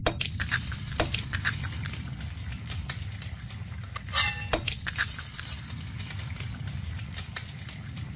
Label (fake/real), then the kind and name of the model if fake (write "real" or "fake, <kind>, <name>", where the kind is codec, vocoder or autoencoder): real